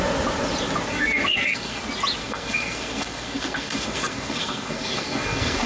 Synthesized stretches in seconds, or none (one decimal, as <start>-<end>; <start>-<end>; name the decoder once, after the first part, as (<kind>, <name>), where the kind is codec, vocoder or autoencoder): 0.9-1.8 (codec, SNAC); 2.2-5.7